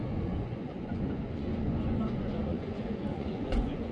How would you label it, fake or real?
fake